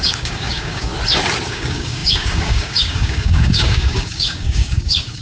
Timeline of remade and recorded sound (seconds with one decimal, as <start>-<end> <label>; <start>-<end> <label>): 0.0-0.9 remade; 0.9-1.5 recorded; 1.5-5.2 remade